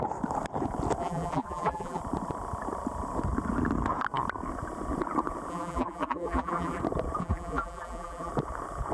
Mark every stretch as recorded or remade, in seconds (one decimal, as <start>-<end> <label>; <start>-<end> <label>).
0.0-1.0 recorded; 1.0-2.0 remade; 2.0-5.5 recorded; 5.5-6.8 remade; 6.8-7.2 recorded; 7.2-8.3 remade; 8.3-8.9 recorded